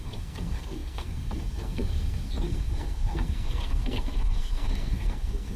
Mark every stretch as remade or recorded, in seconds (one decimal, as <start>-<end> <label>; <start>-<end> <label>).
0.0-5.6 remade